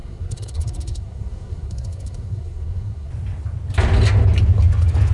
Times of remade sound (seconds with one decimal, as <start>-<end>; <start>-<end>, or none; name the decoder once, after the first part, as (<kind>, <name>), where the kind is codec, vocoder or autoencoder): 0.0-3.1 (codec, SNAC)